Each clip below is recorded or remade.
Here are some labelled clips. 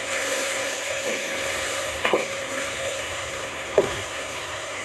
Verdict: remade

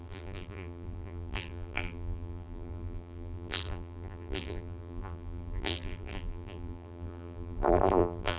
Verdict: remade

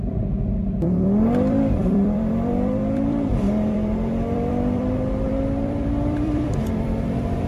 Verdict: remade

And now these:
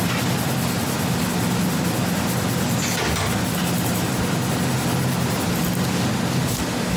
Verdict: recorded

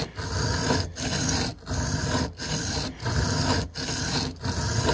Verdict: recorded